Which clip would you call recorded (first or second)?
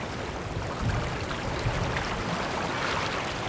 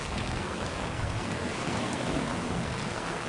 first